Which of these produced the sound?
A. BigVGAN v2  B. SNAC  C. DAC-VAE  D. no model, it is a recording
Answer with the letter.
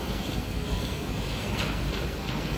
B